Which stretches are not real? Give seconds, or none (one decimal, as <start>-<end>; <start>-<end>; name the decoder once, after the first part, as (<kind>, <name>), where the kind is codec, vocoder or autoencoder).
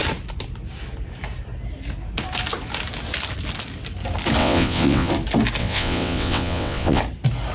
4.4-5.1 (vocoder, WaveNeXt); 5.6-7.0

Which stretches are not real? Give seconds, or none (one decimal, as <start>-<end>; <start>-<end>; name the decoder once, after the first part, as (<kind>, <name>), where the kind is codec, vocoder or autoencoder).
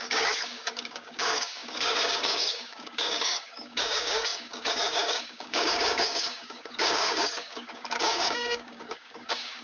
0.0-9.6 (codec, DAC)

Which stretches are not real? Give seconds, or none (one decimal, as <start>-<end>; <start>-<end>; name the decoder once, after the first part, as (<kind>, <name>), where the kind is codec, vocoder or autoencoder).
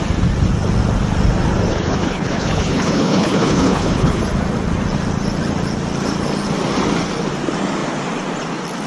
1.7-4.2 (codec, HILCodec)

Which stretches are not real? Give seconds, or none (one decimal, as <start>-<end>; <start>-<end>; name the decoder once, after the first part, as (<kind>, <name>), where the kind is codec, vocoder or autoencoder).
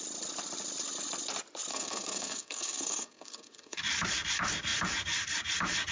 1.7-3.8 (codec, SNAC)